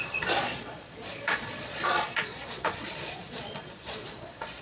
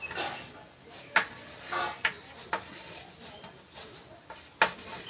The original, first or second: second